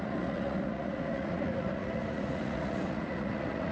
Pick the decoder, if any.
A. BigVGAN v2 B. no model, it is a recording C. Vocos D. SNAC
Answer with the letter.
C